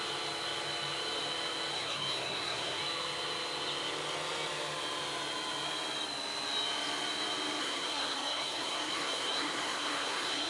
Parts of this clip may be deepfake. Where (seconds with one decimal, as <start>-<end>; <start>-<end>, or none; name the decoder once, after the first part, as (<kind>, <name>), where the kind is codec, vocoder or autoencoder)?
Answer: 1.7-2.8 (codec, SNAC); 7.6-10.5